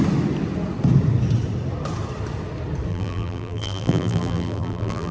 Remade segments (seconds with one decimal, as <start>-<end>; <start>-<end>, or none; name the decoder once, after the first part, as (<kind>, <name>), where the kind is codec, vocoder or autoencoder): 2.9-5.1 (vocoder, BigVGAN v2)